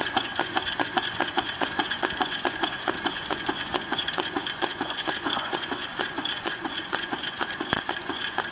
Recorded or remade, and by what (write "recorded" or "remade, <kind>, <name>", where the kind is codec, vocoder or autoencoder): remade, vocoder, Vocos